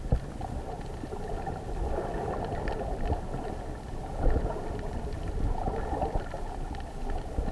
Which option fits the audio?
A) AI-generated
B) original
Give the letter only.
B